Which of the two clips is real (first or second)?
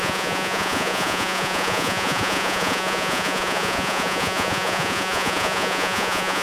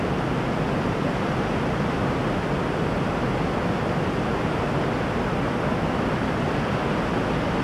second